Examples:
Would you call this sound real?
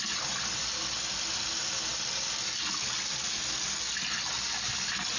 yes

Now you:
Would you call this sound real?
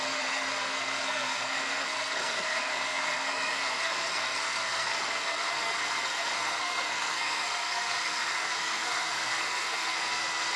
no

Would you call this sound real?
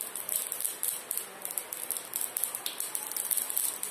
yes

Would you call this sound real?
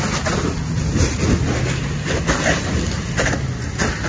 yes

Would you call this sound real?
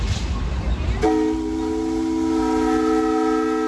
yes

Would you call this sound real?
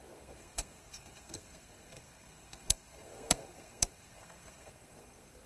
no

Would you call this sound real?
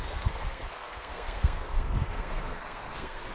no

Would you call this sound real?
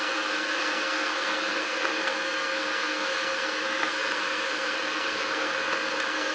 no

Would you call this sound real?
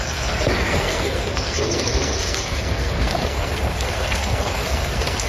no